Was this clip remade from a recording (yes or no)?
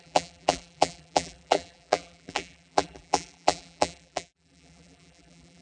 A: yes